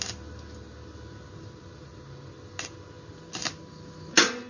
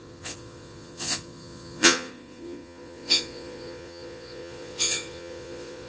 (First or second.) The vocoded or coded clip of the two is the second